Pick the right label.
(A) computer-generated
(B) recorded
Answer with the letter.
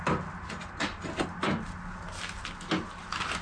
B